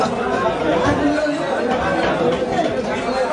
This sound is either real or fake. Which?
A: real